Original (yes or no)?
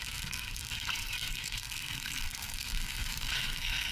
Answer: no